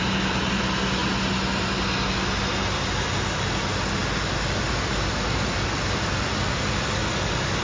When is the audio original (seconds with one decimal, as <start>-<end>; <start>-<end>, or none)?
0.0-7.6